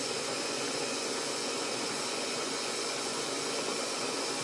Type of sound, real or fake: fake